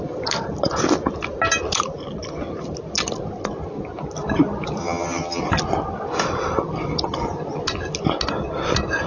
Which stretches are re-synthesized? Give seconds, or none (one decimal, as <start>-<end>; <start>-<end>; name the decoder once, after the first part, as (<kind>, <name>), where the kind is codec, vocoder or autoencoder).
4.8-5.4 (vocoder, HiFi-GAN)